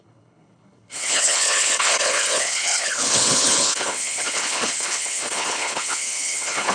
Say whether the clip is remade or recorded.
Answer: remade